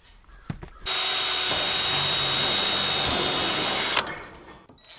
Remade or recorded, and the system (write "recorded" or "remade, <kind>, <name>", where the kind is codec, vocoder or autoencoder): recorded